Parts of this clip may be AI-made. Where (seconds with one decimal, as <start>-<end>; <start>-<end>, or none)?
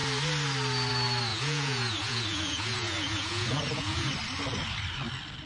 1.3-4.1